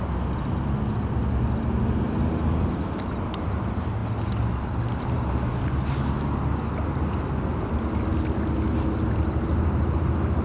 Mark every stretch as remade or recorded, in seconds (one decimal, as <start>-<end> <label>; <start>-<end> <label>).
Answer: 0.0-10.4 recorded